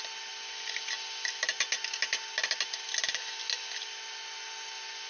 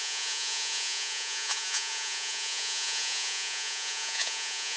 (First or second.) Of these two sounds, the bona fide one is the first